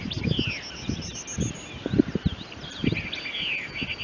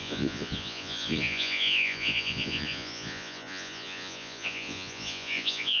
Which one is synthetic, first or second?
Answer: second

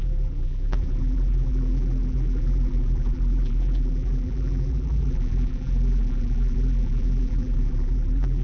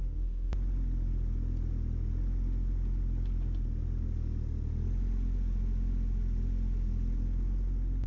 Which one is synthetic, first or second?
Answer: first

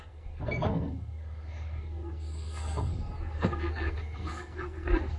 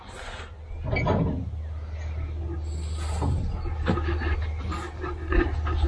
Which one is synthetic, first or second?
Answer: first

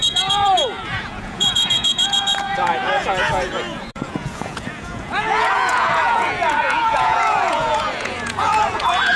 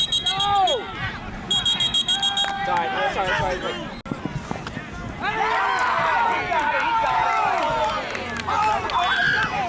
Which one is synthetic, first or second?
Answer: first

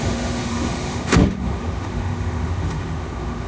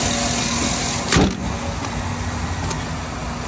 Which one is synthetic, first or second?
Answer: first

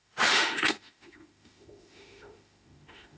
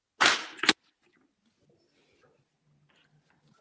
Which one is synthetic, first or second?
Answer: first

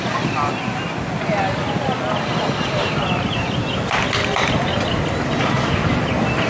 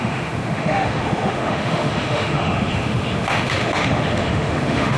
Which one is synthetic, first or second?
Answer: second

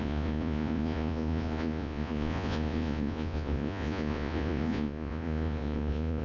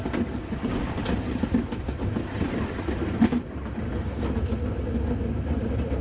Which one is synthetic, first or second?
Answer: first